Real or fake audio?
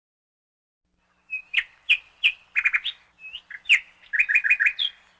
real